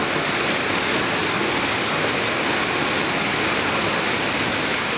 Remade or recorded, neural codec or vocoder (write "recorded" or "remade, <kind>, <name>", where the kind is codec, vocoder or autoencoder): recorded